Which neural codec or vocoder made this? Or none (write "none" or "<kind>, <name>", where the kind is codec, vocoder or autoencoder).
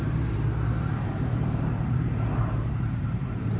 vocoder, BigVGAN v2